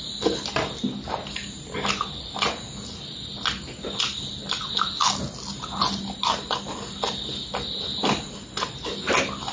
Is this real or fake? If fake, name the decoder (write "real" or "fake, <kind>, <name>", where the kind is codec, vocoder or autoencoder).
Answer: real